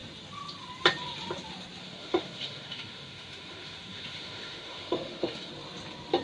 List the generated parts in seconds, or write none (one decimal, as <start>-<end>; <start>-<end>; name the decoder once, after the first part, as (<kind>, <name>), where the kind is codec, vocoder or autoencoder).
1.8-5.5 (autoencoder, DAC-VAE)